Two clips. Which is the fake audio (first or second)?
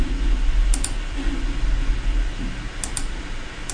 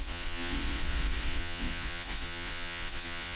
second